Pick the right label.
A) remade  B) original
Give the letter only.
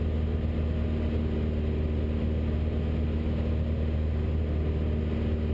B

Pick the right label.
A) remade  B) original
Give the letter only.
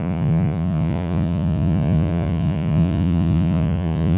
A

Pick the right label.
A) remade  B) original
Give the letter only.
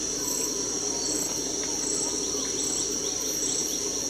B